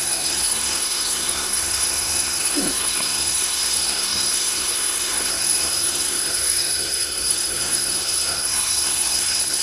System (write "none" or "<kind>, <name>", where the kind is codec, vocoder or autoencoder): codec, SNAC